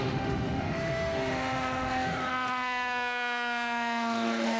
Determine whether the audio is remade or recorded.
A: remade